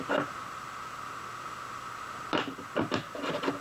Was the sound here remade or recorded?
recorded